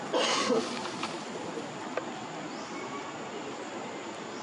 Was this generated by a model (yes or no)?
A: no